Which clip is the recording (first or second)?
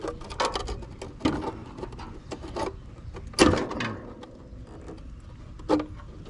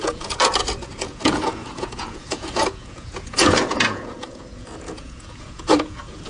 first